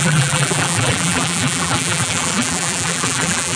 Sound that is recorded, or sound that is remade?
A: remade